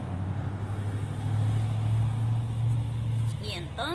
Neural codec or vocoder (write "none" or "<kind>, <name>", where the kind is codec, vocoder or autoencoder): none